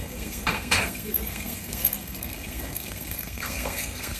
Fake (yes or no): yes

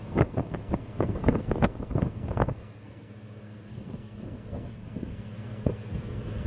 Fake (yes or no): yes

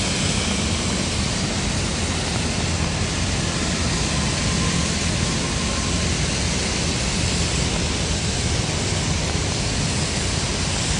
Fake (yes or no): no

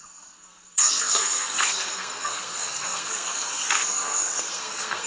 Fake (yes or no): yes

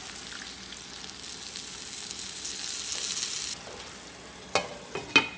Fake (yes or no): no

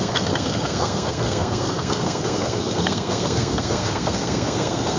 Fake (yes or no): yes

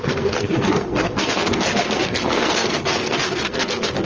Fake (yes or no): yes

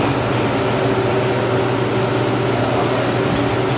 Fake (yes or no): no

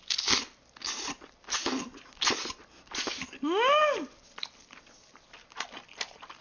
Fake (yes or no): no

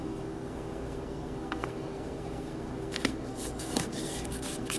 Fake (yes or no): yes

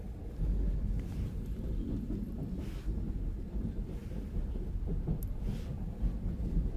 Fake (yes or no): no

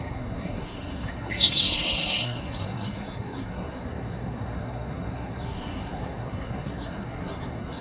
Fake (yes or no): yes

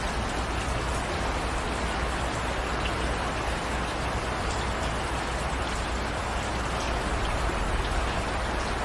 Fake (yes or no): no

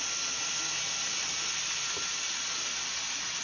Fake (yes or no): no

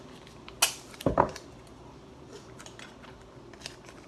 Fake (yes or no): no